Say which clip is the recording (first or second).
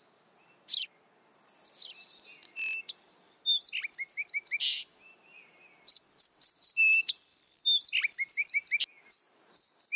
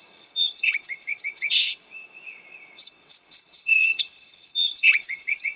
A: first